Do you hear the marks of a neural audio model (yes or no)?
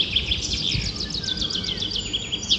no